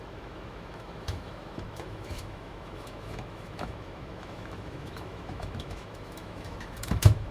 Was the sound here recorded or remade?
remade